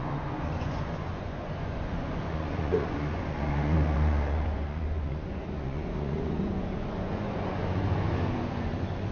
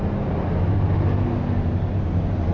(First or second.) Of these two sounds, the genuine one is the second